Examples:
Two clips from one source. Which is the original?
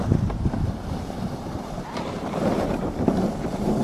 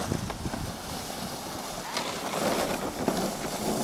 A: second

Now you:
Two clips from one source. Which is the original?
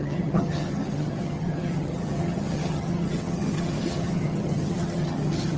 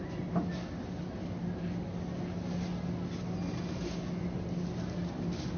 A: second